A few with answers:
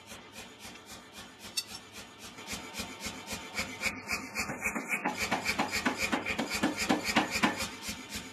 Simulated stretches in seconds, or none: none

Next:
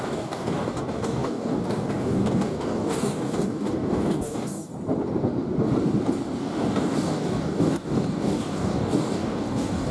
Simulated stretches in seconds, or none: 0.0-4.7 (codec, DAC); 6.4-9.9

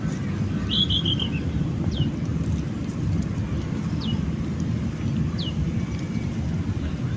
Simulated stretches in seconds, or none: none